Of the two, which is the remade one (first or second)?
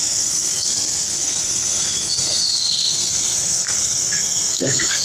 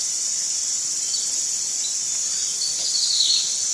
first